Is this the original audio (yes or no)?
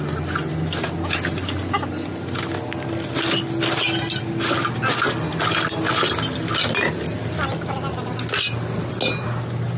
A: yes